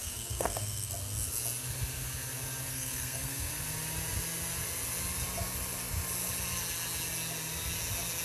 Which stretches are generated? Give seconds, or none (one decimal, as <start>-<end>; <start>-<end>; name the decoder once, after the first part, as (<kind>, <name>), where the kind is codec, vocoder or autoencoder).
0.0-0.9 (codec, SNAC); 2.7-3.5